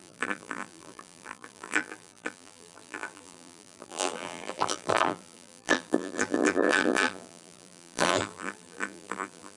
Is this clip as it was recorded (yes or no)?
no